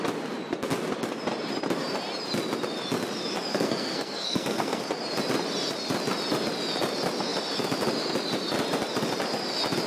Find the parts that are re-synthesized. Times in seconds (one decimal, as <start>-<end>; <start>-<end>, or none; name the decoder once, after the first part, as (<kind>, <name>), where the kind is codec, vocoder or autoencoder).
3.5-4.8 (codec, SNAC)